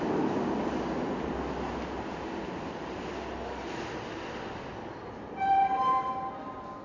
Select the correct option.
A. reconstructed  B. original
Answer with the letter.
B